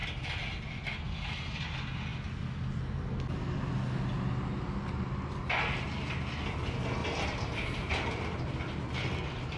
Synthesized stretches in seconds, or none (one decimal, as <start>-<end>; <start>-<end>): 7.0-8.4